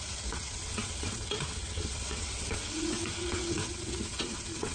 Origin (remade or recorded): remade